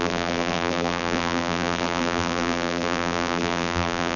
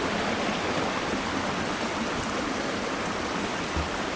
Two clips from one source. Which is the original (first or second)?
second